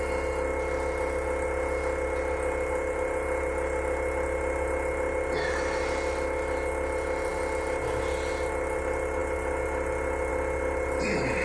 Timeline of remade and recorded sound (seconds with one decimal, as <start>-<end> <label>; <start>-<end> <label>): 0.0-11.4 recorded